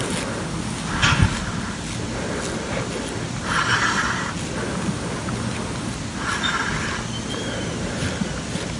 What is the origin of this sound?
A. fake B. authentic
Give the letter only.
B